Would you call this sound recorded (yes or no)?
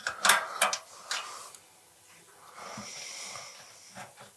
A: yes